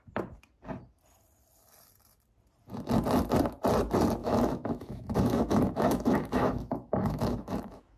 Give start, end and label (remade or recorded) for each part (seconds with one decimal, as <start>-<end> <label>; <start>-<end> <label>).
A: 0.0-4.2 recorded; 4.2-8.0 remade